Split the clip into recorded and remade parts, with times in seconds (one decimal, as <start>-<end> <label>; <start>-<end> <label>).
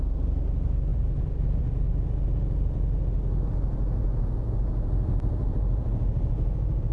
0.0-0.9 recorded; 0.9-1.6 remade; 1.6-4.0 recorded; 4.0-6.9 remade